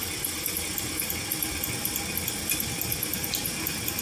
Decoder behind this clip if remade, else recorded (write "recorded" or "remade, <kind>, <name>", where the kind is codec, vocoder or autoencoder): recorded